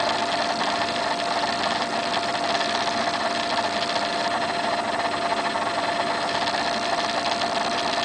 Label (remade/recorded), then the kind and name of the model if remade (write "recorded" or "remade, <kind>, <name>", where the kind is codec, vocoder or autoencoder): recorded